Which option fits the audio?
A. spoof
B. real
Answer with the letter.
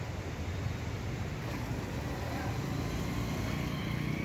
B